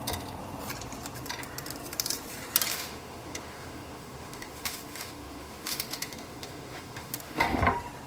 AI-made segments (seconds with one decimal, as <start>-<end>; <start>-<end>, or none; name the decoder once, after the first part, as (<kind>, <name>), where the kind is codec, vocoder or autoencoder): 2.7-7.6 (autoencoder, DAC-VAE)